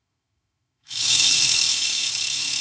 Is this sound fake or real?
fake